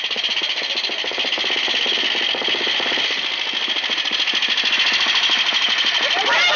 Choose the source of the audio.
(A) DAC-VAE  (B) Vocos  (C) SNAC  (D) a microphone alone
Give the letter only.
D